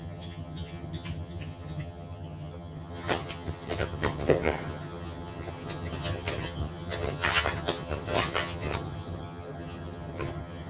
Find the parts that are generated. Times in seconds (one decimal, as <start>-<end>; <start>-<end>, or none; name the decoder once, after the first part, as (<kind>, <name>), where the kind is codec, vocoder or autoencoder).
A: 0.0-10.7 (vocoder, HiFi-GAN)